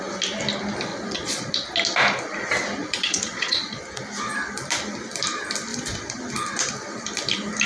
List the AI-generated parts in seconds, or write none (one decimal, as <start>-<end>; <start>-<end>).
0.9-1.5; 2.8-3.8; 5.7-6.2